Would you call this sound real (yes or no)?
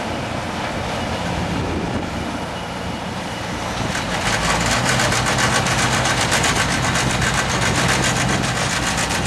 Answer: yes